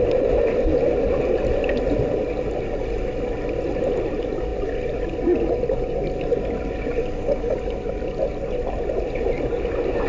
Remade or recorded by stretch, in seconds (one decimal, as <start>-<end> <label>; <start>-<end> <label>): 0.0-10.1 recorded

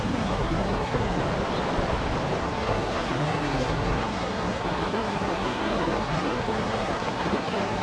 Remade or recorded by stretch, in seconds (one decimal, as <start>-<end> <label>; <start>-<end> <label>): 0.0-1.2 remade; 1.2-2.4 recorded; 2.4-7.8 remade

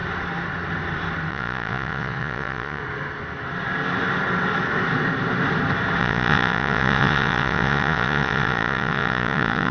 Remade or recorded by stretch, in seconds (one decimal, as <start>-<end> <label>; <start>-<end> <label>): 0.0-1.3 recorded; 1.3-2.8 remade; 2.8-6.0 recorded; 6.0-9.7 remade

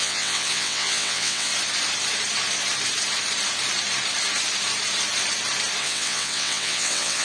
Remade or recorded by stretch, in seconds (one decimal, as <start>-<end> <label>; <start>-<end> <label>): 0.0-1.5 remade; 1.5-5.8 recorded; 5.8-7.2 remade

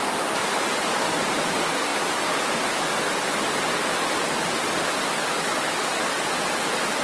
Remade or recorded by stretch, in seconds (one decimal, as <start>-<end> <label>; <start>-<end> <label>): 0.0-7.0 recorded

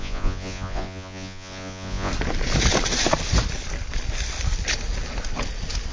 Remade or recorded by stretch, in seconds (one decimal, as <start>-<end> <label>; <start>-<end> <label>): 0.0-2.1 remade; 2.1-5.9 recorded

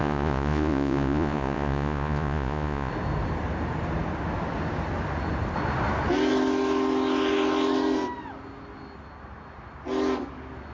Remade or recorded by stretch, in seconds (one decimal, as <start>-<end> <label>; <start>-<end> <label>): 0.0-2.9 remade; 2.9-10.7 recorded